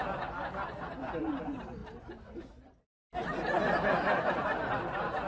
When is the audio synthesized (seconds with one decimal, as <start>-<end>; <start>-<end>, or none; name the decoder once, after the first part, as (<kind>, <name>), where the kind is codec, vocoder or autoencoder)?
none